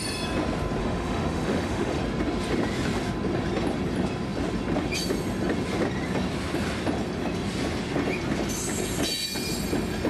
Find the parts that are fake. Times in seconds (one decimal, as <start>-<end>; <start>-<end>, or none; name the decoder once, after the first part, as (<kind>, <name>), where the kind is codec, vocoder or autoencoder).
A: 0.8-2.0 (autoencoder, DAC-VAE)